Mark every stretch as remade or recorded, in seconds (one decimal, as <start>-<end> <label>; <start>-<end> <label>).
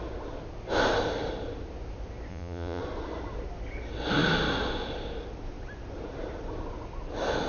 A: 0.0-2.3 recorded; 2.3-2.8 remade; 2.8-7.5 recorded